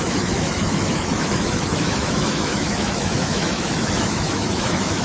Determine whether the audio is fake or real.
fake